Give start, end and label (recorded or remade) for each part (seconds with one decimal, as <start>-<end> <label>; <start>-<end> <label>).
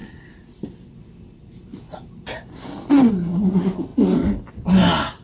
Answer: 0.0-3.1 remade; 3.1-5.2 recorded